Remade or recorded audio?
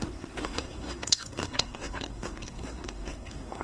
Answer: remade